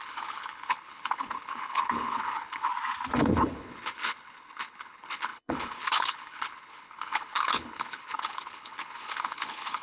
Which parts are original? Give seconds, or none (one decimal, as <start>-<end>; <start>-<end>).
2.7-3.2